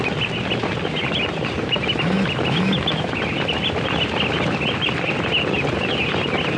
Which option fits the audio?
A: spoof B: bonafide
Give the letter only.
B